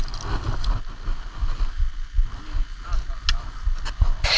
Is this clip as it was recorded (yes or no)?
yes